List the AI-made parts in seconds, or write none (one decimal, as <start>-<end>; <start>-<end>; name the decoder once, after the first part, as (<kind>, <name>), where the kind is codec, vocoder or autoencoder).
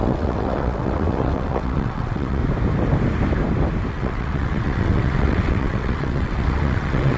0.0-2.4 (vocoder, WaveNeXt); 3.9-7.2